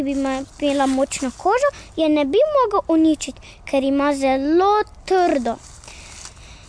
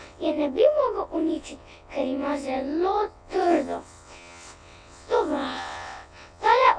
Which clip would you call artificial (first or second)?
second